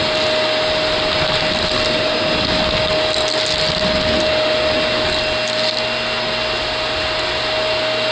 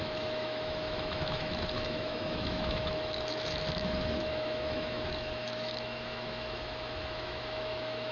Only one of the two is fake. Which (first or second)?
second